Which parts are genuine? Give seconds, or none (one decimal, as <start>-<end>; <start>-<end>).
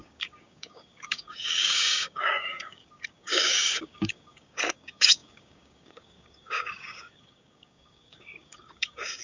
none